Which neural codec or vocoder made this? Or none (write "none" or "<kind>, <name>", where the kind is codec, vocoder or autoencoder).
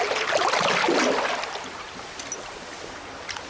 none